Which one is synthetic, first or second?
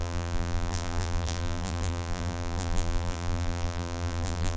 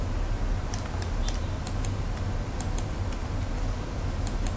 first